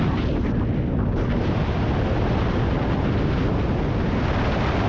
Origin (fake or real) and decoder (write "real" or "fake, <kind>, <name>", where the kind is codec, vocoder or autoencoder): real